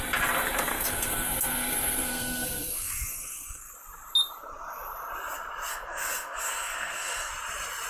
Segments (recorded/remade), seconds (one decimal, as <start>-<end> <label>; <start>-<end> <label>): 0.0-0.7 recorded; 0.7-3.7 remade; 3.7-5.7 recorded; 5.7-7.3 remade; 7.3-7.9 recorded